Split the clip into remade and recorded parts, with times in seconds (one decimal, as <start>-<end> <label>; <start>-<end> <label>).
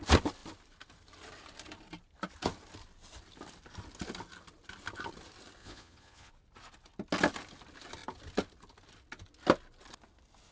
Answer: 0.0-5.6 recorded; 5.6-6.3 remade; 6.3-10.5 recorded